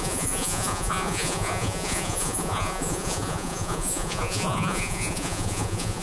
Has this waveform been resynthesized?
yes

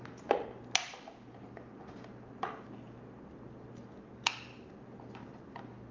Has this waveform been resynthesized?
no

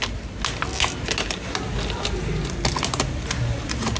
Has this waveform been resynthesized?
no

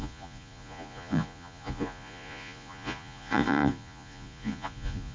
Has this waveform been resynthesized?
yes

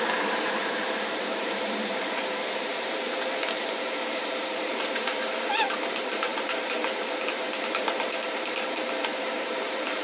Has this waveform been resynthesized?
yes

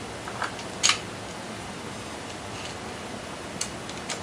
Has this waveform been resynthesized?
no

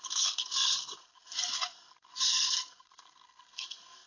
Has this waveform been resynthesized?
yes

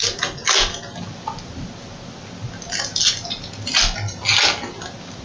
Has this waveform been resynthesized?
no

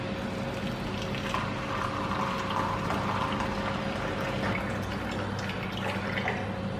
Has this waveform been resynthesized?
no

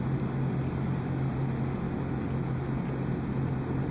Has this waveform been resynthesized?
no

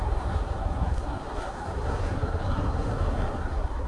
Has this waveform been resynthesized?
yes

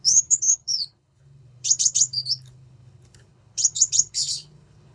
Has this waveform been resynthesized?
yes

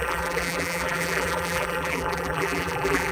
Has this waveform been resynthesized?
yes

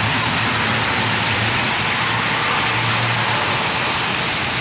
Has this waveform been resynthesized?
no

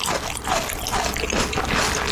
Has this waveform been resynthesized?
no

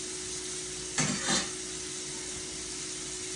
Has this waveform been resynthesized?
no